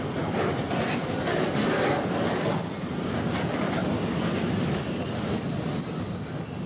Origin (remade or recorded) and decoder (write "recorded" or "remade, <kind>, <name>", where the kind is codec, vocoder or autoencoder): recorded